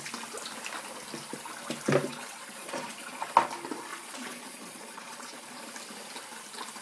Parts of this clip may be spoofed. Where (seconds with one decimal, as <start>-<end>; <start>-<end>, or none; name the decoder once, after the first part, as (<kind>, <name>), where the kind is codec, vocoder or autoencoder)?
2.1-3.3 (vocoder, Vocos); 3.9-5.6